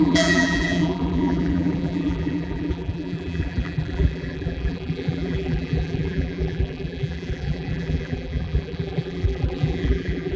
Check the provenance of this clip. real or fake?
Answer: fake